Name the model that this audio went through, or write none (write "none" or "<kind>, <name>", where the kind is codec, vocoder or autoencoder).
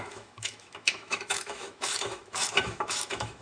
autoencoder, DAC-VAE